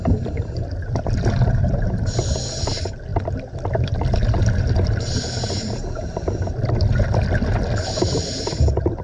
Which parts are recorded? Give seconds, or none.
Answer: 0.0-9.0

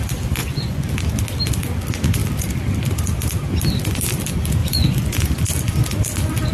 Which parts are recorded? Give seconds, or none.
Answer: 0.0-0.4; 0.9-4.6; 5.4-6.5

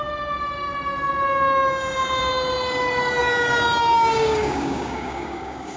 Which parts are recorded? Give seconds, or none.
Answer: 0.0-3.2

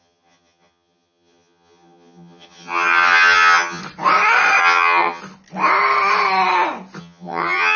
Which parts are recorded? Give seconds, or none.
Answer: 3.8-4.6; 5.2-7.0

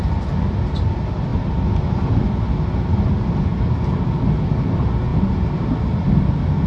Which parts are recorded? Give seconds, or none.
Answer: 0.0-6.7

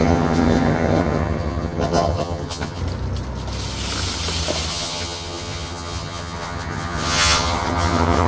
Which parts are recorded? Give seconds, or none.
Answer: 2.8-4.7

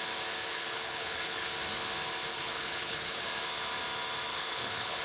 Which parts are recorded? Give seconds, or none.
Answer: 0.0-0.5; 1.5-2.3; 3.2-4.3

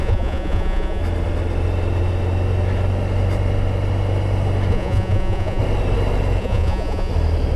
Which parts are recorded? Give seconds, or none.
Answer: 1.0-4.7; 5.6-6.4; 7.1-7.6